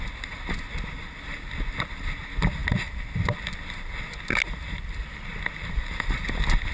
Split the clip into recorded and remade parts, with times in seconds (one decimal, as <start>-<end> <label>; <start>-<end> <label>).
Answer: 0.0-6.7 recorded